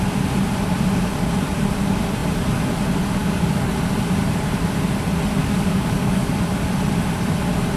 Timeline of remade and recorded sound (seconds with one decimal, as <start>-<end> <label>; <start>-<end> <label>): 0.0-3.2 recorded; 3.2-3.7 remade; 3.7-5.4 recorded; 5.4-6.3 remade; 6.3-7.8 recorded